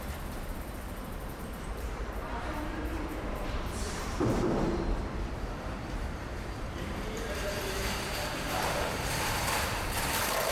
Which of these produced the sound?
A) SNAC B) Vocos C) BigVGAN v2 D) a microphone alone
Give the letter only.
C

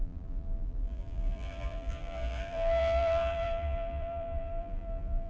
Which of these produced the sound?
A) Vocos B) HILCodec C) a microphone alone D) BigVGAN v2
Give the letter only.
D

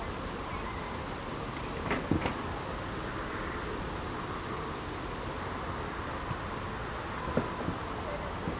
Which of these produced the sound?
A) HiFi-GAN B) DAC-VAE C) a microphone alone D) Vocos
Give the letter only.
C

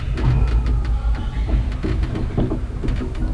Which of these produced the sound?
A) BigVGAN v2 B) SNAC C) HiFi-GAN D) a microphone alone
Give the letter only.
D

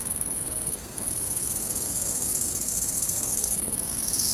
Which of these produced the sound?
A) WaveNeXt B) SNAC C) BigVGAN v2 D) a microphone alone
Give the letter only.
B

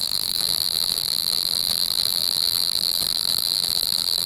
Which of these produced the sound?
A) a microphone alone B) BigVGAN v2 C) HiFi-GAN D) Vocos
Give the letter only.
B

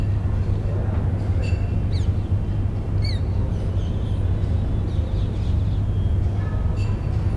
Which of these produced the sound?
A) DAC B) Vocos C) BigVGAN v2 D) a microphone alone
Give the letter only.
D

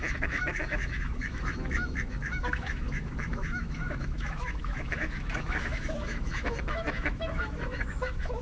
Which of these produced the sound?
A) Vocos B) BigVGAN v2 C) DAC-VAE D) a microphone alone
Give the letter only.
C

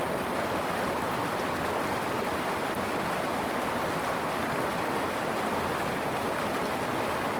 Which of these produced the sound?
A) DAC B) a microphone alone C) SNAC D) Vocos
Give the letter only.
B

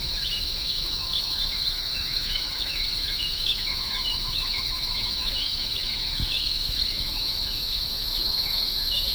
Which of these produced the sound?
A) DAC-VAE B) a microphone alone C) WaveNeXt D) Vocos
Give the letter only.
A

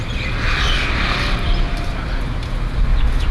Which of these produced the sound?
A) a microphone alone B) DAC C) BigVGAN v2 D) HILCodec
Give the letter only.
A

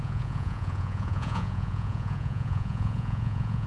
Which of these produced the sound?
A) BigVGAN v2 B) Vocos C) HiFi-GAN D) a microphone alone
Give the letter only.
B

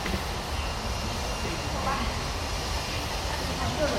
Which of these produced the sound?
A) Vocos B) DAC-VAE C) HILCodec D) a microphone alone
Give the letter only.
D